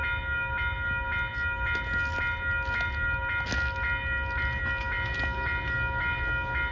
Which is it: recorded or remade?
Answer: recorded